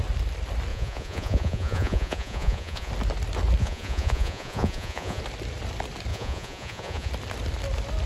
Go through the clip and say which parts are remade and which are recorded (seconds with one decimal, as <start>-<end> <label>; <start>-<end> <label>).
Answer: 0.0-0.7 recorded; 0.7-2.9 remade; 2.9-3.6 recorded; 3.6-5.2 remade; 5.2-6.1 recorded; 6.1-7.1 remade; 7.1-8.1 recorded

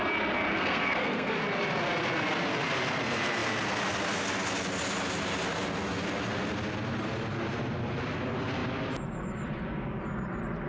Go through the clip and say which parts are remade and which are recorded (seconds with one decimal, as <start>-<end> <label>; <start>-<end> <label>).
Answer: 0.0-0.5 recorded; 0.5-1.4 remade; 1.4-10.7 recorded